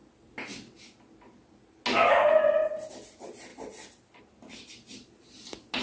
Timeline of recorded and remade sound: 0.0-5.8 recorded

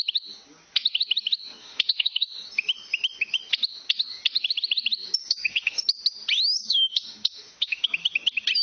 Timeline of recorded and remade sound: 0.0-1.6 recorded; 1.6-2.3 remade; 2.3-5.2 recorded; 5.2-5.8 remade; 5.8-6.6 recorded; 6.6-7.9 remade; 7.9-8.6 recorded

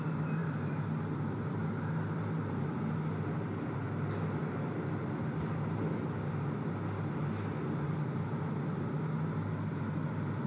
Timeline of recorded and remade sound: 0.0-10.5 recorded